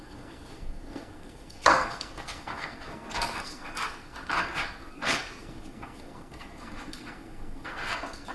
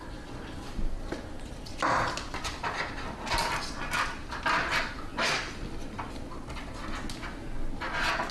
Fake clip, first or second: first